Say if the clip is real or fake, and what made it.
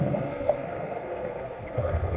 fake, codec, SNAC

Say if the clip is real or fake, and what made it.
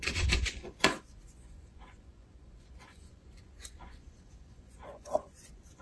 fake, vocoder, Vocos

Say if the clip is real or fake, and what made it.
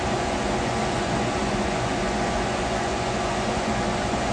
fake, vocoder, Vocos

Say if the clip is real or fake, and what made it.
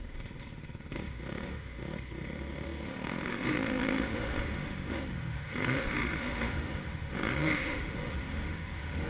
fake, autoencoder, DAC-VAE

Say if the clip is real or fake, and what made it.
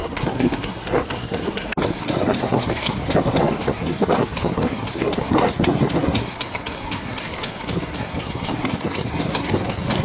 fake, codec, SNAC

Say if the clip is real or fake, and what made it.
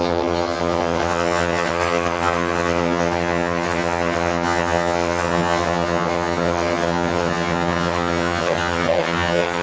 fake, vocoder, HiFi-GAN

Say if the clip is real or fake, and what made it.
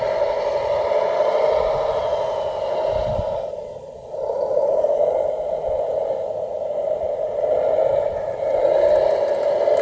real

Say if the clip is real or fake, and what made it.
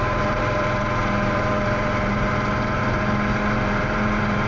fake, vocoder, BigVGAN v2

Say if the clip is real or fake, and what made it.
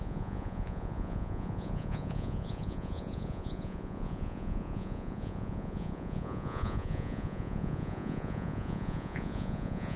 fake, vocoder, Vocos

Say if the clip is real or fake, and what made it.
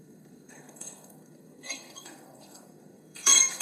fake, codec, SNAC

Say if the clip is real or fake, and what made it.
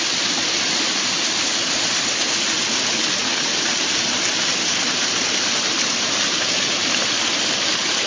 real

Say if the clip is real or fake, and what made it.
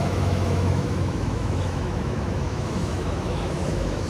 fake, autoencoder, DAC-VAE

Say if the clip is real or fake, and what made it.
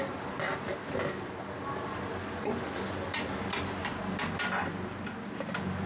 real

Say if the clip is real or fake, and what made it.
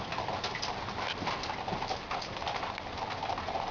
real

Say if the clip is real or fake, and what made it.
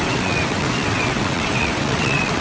fake, vocoder, WaveNeXt